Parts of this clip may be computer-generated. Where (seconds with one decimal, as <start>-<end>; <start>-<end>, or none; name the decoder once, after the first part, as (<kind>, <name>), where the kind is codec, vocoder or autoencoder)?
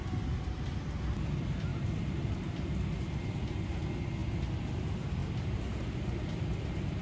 1.7-3.0 (vocoder, BigVGAN v2)